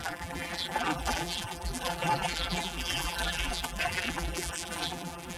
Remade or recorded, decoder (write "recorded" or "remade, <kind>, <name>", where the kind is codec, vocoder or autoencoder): remade, vocoder, BigVGAN v2